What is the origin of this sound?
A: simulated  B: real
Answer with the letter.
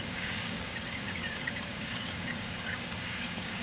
A